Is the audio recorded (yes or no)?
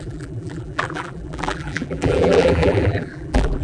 no